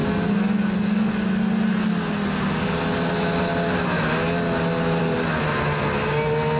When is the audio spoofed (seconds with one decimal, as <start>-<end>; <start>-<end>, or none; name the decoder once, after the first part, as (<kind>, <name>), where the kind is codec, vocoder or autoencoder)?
none